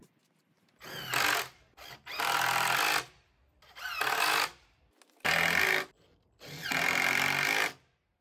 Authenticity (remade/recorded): recorded